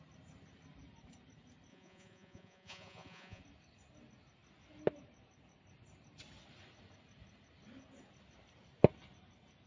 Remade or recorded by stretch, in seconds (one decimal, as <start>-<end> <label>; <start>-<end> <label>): 0.0-1.7 recorded; 1.7-3.4 remade; 3.4-9.7 recorded